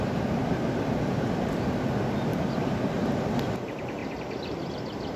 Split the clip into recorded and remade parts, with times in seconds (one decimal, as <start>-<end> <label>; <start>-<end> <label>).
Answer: 0.0-2.3 recorded; 2.3-2.8 remade; 2.8-4.0 recorded; 4.0-4.7 remade; 4.7-5.2 recorded

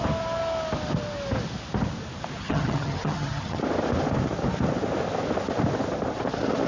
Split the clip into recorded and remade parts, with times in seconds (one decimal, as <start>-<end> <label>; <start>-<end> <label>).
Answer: 0.0-2.4 recorded; 2.4-3.6 remade; 3.6-6.7 recorded

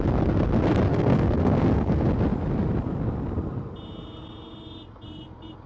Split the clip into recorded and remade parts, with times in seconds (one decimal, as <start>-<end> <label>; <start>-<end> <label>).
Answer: 0.0-0.9 recorded; 0.9-2.0 remade; 2.0-5.7 recorded